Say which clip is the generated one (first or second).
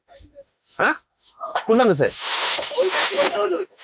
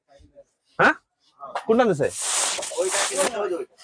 first